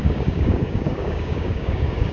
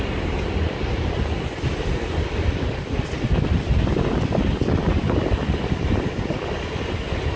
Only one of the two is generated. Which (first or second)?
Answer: first